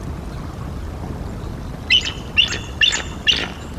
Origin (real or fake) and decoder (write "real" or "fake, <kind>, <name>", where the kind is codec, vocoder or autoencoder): real